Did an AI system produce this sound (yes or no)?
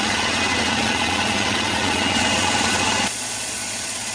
yes